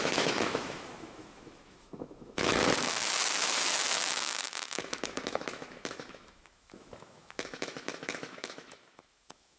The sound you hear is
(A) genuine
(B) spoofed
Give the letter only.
B